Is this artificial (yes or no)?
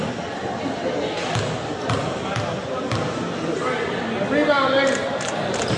no